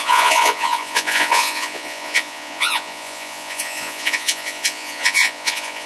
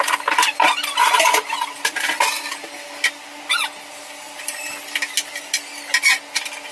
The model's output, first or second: first